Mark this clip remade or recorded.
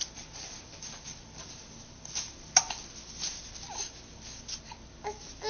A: recorded